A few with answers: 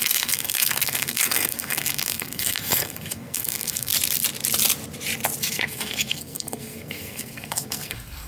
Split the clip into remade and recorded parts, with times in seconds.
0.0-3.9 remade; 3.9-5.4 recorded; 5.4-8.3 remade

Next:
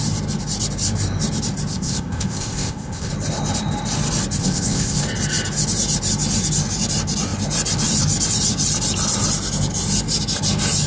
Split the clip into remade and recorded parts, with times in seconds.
0.0-1.7 recorded; 1.7-3.1 remade; 3.1-4.4 recorded; 4.4-5.0 remade; 5.0-10.9 recorded

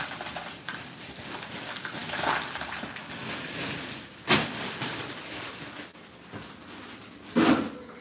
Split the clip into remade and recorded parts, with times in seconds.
0.0-8.0 recorded

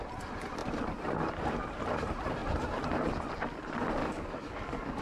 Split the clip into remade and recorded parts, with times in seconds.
0.0-4.0 recorded; 4.0-5.0 remade